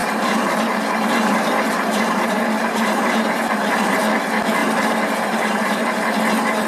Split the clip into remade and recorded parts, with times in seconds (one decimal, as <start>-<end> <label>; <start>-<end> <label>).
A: 0.0-4.0 remade; 4.0-4.6 recorded; 4.6-6.0 remade; 6.0-6.7 recorded